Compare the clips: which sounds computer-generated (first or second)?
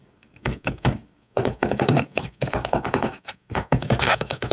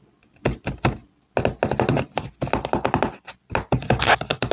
first